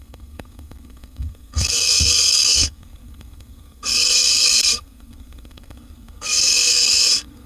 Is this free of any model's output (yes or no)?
no